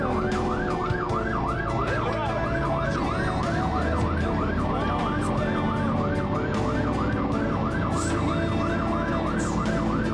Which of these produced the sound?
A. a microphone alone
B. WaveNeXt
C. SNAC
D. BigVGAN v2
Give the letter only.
A